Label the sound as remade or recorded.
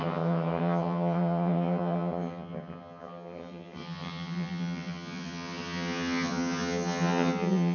remade